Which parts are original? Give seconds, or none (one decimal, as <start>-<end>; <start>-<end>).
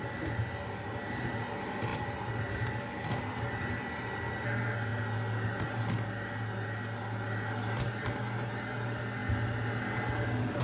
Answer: 0.0-10.6